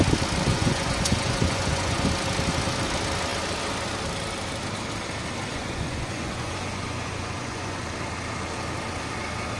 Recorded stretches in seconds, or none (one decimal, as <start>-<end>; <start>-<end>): 0.0-0.5; 2.1-5.5; 7.8-9.6